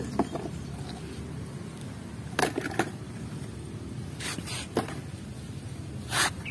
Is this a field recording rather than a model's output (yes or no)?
yes